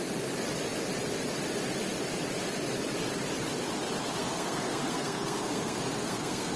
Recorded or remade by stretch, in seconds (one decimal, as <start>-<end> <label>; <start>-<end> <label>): 0.0-4.2 recorded; 4.2-6.6 remade